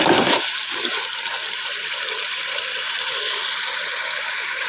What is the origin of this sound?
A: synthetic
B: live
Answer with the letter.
A